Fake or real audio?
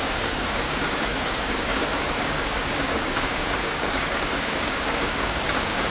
fake